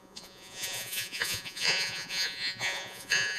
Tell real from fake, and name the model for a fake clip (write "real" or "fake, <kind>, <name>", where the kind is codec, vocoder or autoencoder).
fake, vocoder, Vocos